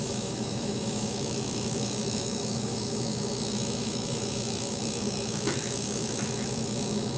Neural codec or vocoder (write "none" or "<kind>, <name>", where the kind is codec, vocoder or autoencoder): autoencoder, DAC-VAE